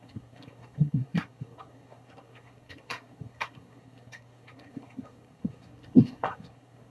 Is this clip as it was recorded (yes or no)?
no